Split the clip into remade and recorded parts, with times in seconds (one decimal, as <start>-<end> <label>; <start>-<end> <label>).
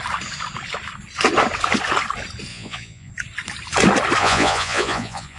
0.0-2.5 recorded; 2.5-3.1 remade; 3.1-4.2 recorded; 4.2-5.4 remade